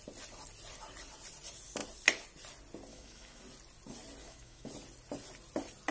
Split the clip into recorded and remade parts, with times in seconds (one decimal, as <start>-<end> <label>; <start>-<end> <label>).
0.0-2.9 recorded; 2.9-3.4 remade; 3.4-4.2 recorded; 4.2-4.7 remade; 4.7-5.9 recorded